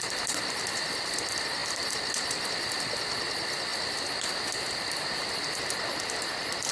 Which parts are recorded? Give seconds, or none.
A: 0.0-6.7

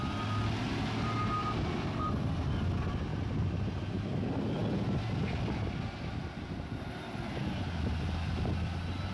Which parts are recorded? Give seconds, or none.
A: 0.0-3.1; 3.8-9.1

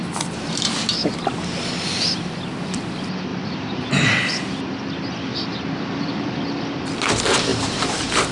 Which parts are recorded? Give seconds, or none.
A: 0.0-3.3; 4.3-5.3; 6.3-7.5

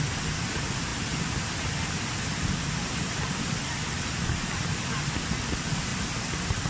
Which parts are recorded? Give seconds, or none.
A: 0.0-5.9

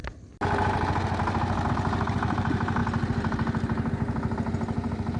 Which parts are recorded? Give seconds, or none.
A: 0.0-1.7; 2.8-5.2

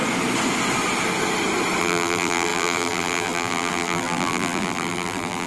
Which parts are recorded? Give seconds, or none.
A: 0.0-1.8

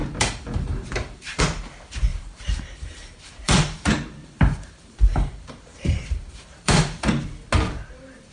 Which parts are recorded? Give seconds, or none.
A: 1.4-2.1; 7.1-8.3